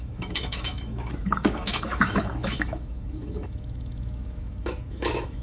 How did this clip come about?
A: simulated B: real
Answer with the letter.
A